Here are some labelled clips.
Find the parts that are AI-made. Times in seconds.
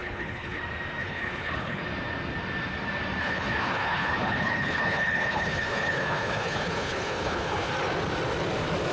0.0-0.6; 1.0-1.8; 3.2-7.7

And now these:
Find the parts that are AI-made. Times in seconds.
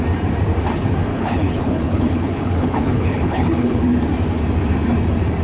1.1-3.8